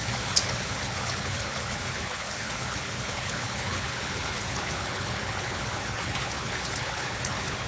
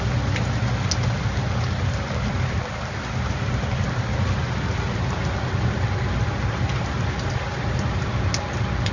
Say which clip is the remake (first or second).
first